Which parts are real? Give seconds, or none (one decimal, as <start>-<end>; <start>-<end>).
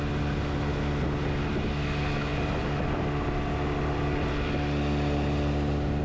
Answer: 0.0-6.0